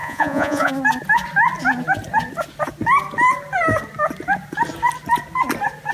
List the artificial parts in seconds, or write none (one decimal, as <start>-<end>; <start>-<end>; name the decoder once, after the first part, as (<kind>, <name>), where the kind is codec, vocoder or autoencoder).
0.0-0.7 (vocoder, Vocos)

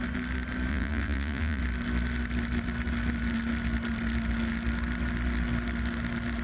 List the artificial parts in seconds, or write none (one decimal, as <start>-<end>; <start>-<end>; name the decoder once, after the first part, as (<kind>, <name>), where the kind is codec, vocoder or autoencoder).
0.7-1.6 (vocoder, Vocos)

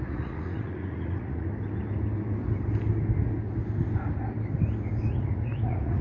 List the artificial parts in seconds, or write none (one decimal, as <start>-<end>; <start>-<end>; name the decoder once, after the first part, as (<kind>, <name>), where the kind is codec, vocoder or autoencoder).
0.0-1.5 (vocoder, Vocos); 5.1-6.0

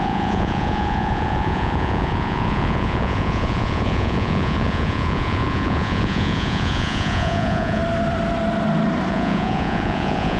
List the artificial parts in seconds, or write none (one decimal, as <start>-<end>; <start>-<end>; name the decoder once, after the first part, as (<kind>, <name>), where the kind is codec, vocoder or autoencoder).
0.0-7.8 (vocoder, Vocos); 9.1-10.4